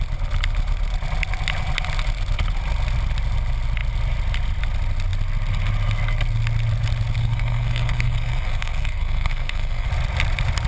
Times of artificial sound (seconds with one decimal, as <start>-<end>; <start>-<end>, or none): 7.2-9.9